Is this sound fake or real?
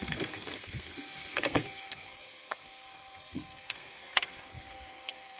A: fake